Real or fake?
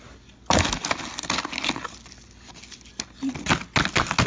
real